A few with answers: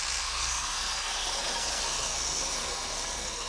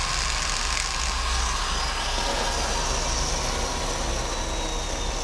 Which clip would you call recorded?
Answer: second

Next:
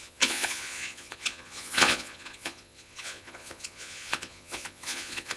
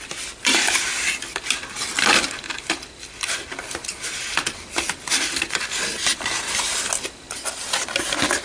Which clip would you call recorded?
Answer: second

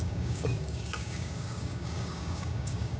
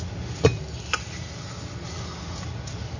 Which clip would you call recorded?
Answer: second